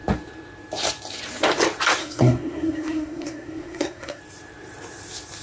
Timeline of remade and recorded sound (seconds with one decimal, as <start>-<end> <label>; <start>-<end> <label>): 0.0-2.0 recorded; 2.0-4.2 remade; 4.2-5.4 recorded